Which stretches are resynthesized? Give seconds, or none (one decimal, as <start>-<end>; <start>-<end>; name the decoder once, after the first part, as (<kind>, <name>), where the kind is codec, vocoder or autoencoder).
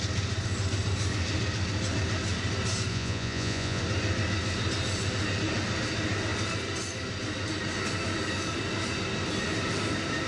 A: 2.9-3.8 (vocoder, Vocos)